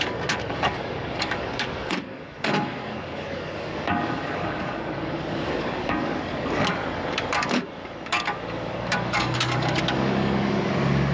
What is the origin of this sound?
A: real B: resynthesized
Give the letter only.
B